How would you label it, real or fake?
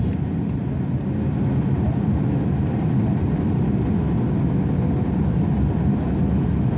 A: real